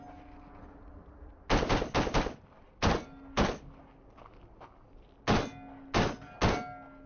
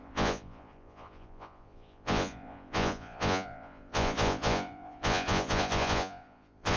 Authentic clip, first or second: first